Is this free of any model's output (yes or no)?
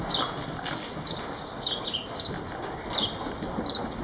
yes